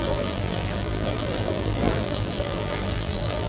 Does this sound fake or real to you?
fake